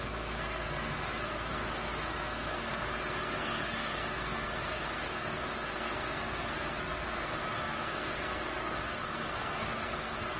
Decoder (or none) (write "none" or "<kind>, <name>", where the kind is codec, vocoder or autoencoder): codec, SNAC